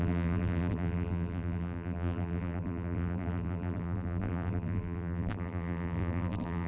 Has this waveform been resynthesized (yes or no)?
yes